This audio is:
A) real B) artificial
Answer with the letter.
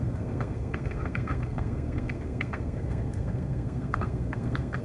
B